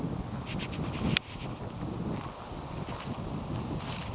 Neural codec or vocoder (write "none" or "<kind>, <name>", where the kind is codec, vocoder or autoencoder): none